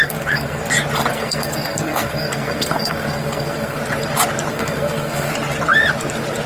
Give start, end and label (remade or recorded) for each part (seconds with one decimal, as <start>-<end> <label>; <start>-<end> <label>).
0.0-0.6 remade; 0.6-1.1 recorded; 1.1-3.8 remade; 3.8-4.5 recorded; 4.5-5.3 remade; 5.3-6.5 recorded